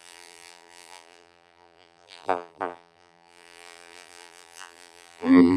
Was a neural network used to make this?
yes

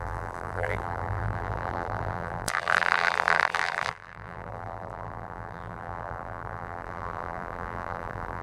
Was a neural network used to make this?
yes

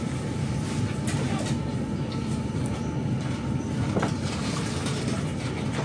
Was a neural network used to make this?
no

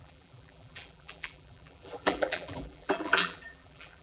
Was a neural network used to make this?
yes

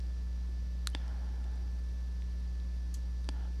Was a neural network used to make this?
no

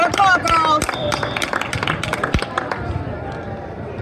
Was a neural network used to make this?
no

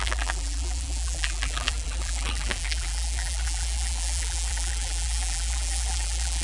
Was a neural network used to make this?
yes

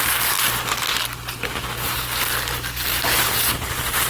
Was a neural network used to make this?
no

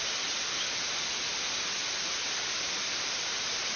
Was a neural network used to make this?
no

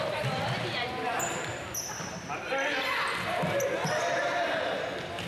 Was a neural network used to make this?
no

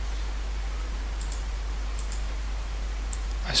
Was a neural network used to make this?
yes